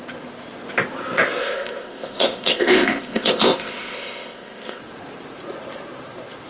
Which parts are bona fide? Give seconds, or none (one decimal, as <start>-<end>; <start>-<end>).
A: 0.0-1.4; 4.8-6.5